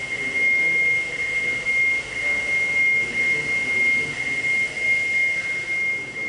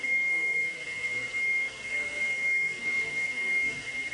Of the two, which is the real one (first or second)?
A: first